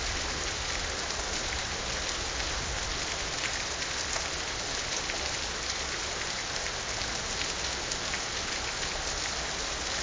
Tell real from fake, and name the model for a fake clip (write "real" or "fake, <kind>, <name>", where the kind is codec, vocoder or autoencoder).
real